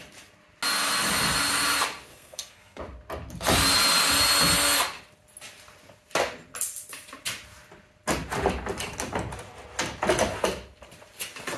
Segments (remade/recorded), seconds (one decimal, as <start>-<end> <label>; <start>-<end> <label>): 0.0-2.1 recorded; 2.1-2.8 remade; 2.8-11.6 recorded